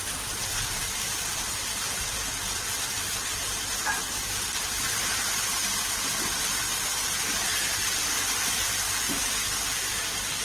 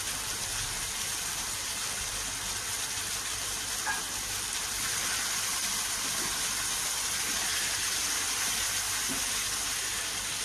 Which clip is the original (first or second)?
second